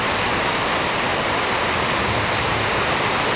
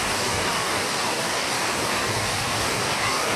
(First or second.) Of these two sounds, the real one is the first